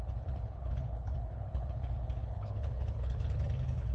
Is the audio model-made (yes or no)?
yes